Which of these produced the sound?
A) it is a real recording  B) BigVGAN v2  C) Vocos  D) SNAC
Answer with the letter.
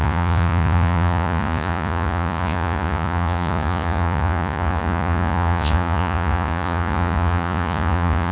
C